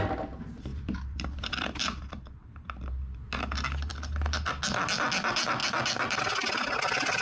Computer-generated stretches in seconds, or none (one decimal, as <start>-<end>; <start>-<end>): 0.7-3.0